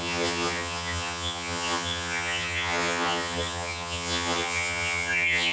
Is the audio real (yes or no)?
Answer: no